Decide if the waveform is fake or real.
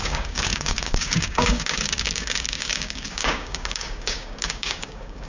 fake